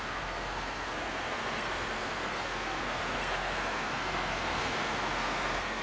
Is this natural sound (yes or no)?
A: no